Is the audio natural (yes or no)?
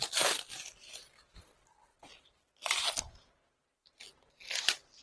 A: yes